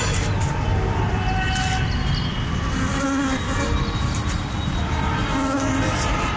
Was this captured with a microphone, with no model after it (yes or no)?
yes